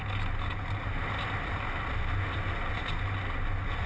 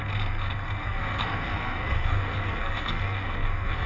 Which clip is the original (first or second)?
first